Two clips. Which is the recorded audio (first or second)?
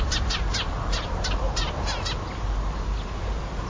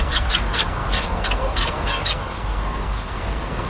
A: first